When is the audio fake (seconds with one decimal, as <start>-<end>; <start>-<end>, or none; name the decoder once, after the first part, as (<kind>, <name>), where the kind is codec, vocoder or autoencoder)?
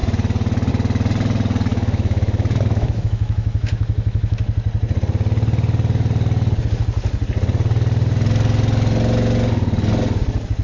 1.7-4.4 (autoencoder, DAC-VAE)